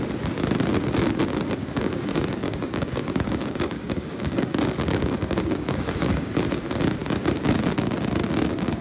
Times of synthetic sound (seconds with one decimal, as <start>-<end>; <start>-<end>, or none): 1.6-6.4